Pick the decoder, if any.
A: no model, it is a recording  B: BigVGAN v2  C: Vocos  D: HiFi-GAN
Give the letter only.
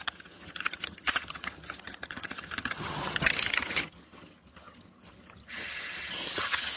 D